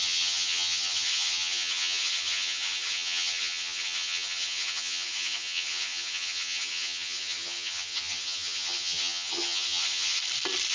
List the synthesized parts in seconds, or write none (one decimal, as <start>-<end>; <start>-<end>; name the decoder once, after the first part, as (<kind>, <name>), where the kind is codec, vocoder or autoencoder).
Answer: 0.0-10.2 (vocoder, HiFi-GAN)